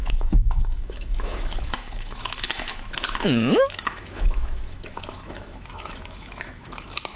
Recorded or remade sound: remade